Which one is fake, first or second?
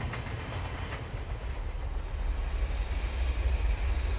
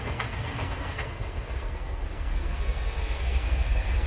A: second